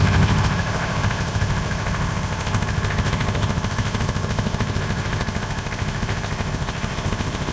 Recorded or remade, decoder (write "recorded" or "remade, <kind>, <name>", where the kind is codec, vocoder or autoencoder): remade, codec, ZipCodec